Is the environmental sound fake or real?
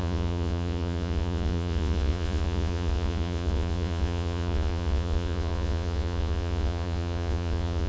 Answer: fake